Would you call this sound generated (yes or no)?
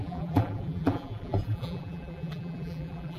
yes